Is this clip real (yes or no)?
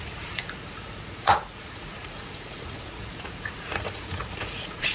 no